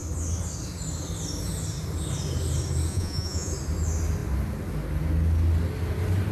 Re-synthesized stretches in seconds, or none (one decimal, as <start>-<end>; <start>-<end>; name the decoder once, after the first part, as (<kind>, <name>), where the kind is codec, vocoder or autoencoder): 2.9-3.5 (vocoder, Vocos)